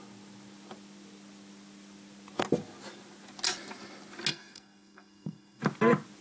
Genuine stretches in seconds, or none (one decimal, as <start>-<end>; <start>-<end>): 0.0-4.3; 5.6-6.2